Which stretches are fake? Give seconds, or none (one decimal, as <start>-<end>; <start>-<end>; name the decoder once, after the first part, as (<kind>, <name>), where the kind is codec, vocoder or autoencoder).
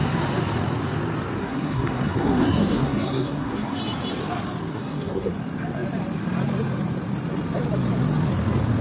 1.4-3.8 (codec, SNAC); 4.7-5.3